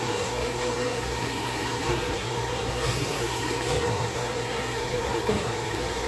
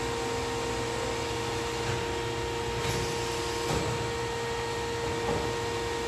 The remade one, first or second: first